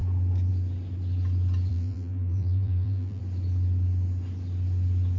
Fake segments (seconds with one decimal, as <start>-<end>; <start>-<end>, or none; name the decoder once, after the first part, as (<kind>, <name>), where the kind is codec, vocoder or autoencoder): 1.7-3.2 (vocoder, BigVGAN v2)